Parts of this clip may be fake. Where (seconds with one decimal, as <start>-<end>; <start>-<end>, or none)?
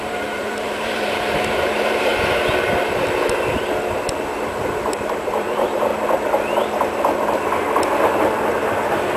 0.0-2.1; 4.6-5.9; 8.1-9.2